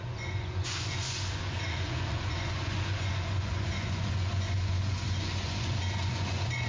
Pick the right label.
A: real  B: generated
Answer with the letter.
B